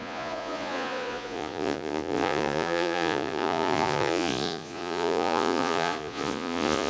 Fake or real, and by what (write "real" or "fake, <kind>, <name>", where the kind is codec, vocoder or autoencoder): fake, vocoder, Vocos